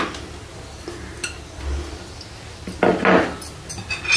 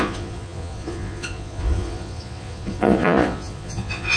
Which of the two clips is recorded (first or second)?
first